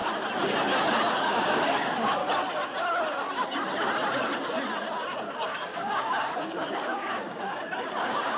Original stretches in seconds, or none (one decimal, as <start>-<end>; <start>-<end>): 0.0-1.1; 2.2-5.3